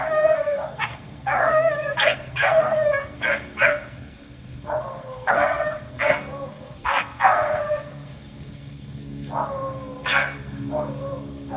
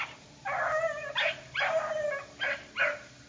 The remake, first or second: first